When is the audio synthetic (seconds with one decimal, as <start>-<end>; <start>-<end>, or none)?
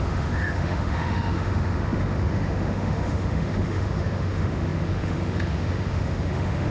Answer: 0.0-6.7